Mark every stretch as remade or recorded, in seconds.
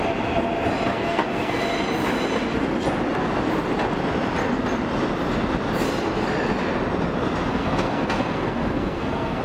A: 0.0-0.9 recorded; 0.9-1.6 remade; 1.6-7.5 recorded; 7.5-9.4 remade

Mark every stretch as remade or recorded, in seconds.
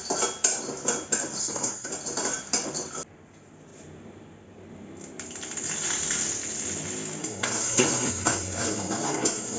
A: 0.0-1.4 recorded; 1.4-1.9 remade; 1.9-7.2 recorded; 7.2-9.6 remade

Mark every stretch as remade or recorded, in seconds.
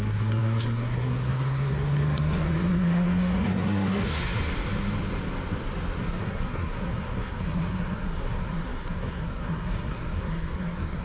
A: 0.0-4.4 remade; 4.4-6.0 recorded; 6.0-11.0 remade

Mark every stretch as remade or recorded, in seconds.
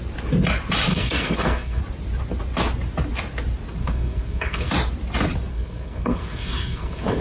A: 0.0-0.9 recorded; 0.9-1.8 remade; 1.8-3.8 recorded; 3.8-4.7 remade; 4.7-5.5 recorded; 5.5-7.2 remade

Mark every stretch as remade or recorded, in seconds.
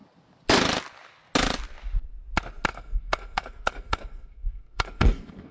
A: 0.0-2.7 recorded; 2.7-5.5 remade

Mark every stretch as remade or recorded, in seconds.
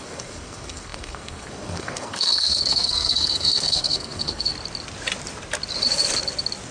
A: 0.0-4.5 remade; 4.5-6.7 recorded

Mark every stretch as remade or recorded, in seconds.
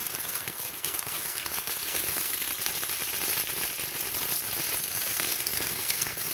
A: 0.0-2.5 remade; 2.5-4.8 recorded; 4.8-6.3 remade